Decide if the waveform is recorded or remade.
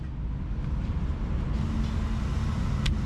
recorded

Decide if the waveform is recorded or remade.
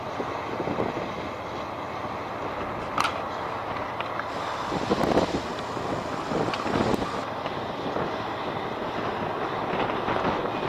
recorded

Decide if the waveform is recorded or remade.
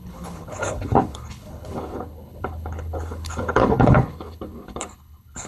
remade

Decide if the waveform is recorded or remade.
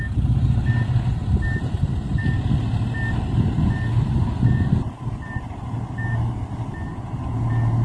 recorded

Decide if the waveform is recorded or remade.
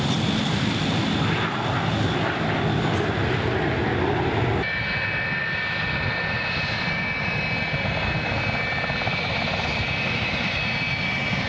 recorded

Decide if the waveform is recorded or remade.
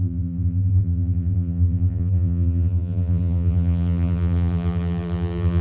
remade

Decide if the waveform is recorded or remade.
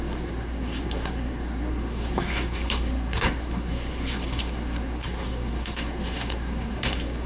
remade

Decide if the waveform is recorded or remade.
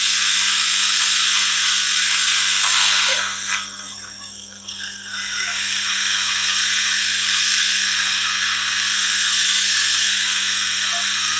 remade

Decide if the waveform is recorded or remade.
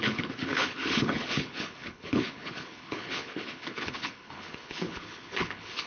remade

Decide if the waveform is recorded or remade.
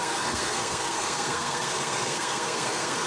remade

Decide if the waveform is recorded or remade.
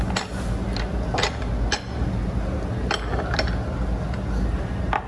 recorded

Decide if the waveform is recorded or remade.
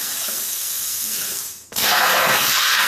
remade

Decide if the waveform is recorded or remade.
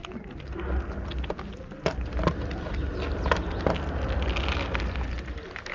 recorded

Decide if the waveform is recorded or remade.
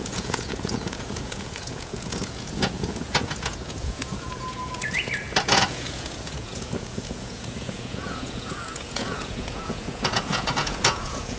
remade